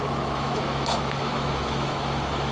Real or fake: fake